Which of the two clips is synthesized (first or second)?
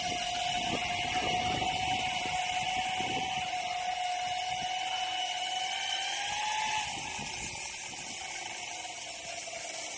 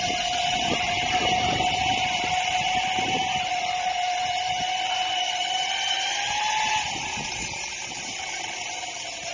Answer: second